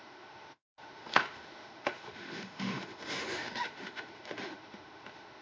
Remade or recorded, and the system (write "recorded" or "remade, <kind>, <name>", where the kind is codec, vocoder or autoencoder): remade, autoencoder, DAC-VAE